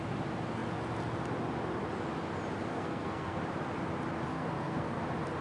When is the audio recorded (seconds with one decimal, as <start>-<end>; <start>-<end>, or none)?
0.0-2.7; 3.4-4.3; 5.0-5.4